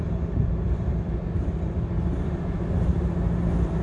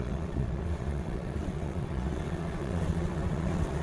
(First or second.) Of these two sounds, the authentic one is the first